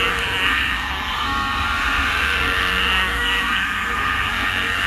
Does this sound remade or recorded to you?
remade